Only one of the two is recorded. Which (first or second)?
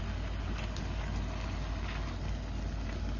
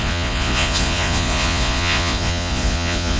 first